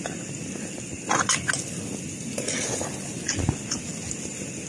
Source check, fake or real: real